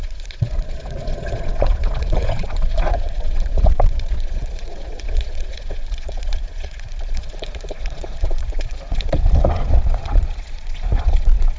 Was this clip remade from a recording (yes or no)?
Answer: yes